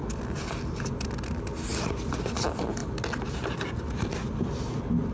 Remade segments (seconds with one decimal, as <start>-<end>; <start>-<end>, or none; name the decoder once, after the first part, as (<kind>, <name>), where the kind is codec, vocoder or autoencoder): none